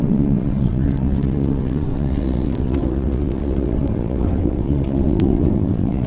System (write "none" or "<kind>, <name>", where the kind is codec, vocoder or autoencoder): vocoder, WaveNeXt